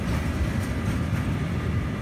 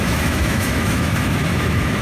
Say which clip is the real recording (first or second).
first